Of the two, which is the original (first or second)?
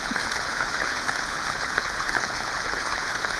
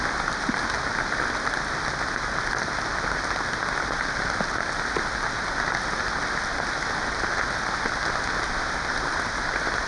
second